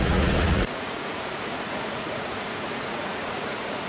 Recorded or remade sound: remade